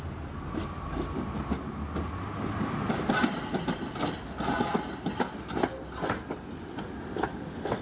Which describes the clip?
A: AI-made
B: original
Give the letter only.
B